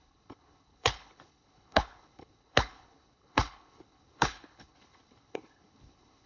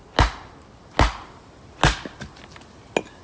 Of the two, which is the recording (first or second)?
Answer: second